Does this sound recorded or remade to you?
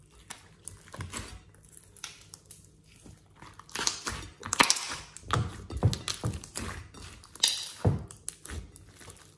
recorded